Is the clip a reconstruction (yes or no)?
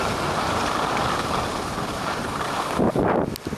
no